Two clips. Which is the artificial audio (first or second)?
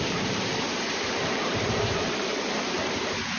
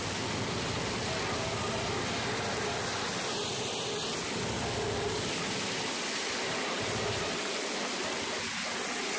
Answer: first